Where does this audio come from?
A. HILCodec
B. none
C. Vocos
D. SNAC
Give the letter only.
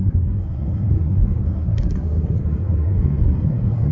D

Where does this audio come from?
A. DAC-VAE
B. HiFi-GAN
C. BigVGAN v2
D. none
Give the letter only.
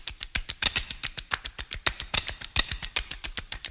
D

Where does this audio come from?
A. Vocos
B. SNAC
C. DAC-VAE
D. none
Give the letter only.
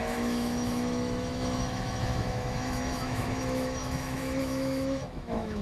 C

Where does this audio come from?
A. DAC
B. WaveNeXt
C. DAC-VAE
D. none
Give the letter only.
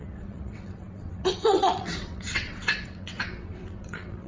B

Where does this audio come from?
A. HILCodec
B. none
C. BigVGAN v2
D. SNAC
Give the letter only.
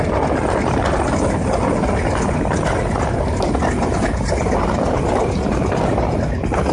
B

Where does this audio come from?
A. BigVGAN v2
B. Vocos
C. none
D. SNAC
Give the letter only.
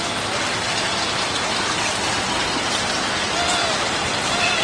C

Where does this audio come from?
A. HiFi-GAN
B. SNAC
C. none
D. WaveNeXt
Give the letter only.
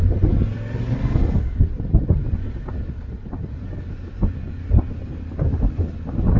C